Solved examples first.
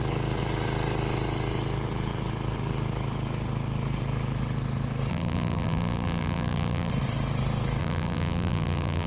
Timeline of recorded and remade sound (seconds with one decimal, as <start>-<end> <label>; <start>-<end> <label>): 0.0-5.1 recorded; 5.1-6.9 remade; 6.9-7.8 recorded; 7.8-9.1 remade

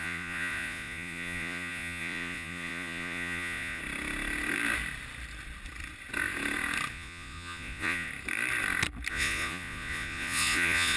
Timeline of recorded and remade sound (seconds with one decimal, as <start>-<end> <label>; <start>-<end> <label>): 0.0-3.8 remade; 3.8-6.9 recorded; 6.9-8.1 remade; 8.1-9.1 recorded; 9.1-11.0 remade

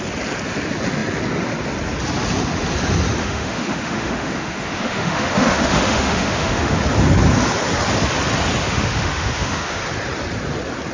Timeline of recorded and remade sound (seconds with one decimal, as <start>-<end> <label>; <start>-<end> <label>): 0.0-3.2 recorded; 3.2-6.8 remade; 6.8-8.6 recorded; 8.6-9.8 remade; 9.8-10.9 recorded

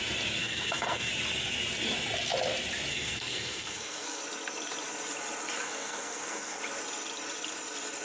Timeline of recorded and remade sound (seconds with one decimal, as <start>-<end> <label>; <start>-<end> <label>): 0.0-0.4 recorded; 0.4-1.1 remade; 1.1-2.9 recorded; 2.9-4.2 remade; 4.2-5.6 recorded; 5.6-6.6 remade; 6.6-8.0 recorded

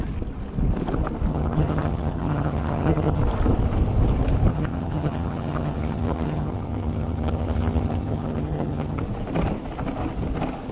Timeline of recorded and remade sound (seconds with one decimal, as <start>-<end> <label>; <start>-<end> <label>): 0.0-1.3 recorded; 1.3-3.2 remade; 3.2-4.5 recorded; 4.5-9.0 remade; 9.0-10.7 recorded